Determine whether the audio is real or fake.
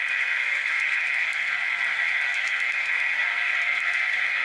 fake